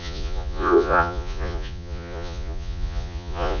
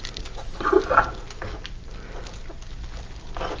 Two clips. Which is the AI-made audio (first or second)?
first